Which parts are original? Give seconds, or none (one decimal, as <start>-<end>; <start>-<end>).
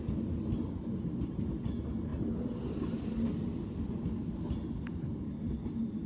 0.0-6.1